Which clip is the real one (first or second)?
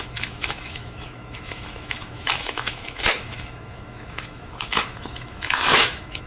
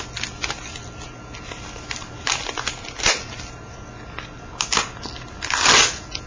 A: second